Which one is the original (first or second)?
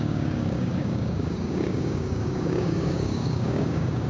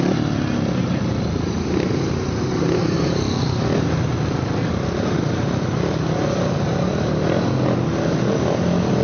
second